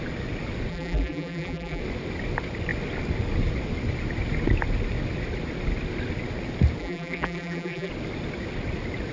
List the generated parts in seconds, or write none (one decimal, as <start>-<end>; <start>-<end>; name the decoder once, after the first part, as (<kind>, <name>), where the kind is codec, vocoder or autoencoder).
0.7-1.8 (vocoder, BigVGAN v2); 6.8-7.9